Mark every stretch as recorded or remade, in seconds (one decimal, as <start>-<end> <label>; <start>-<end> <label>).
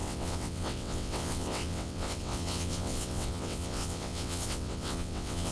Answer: 0.0-5.5 remade